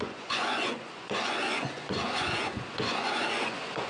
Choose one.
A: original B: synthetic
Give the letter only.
B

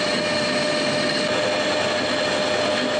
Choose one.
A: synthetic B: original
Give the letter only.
B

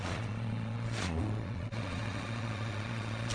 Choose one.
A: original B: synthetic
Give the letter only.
B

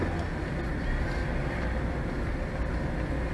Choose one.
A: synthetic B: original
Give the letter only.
B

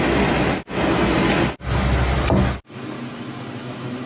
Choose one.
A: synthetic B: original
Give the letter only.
B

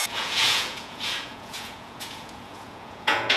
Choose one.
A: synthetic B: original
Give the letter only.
A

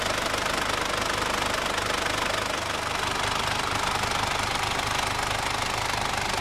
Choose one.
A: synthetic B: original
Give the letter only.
B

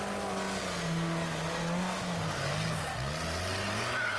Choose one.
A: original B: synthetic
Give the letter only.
A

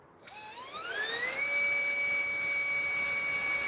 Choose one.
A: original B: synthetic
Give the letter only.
A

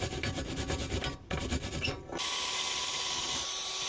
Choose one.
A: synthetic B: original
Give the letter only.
B